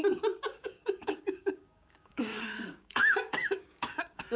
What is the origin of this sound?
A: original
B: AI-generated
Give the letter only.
B